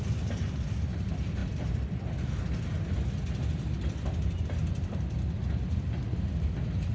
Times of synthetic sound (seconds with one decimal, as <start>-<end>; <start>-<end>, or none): none